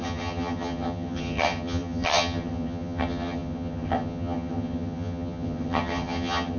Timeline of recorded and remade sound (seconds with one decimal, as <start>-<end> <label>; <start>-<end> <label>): 0.0-6.6 remade